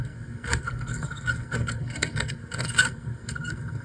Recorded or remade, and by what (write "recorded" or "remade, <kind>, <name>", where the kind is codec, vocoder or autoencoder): remade, codec, SNAC